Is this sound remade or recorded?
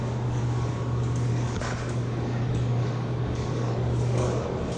remade